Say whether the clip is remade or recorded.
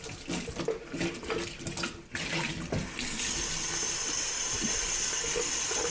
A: recorded